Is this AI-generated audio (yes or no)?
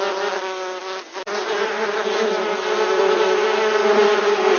no